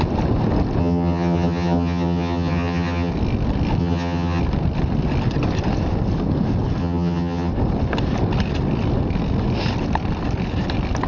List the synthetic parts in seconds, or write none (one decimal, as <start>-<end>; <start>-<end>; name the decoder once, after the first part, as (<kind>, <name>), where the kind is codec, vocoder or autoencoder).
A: 0.8-3.1 (vocoder, HiFi-GAN); 3.8-4.4; 6.8-7.5